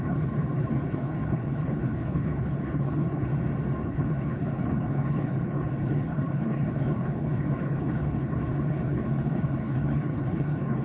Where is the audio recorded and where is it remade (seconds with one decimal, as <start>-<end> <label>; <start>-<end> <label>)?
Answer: 0.0-3.3 remade; 3.3-3.8 recorded; 3.8-10.8 remade